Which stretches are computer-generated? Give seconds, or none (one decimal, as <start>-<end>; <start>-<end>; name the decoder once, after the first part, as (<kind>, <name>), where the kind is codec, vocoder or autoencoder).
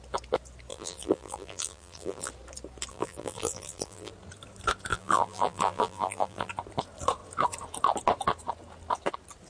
0.7-2.3 (vocoder, BigVGAN v2); 2.9-4.1; 4.9-6.5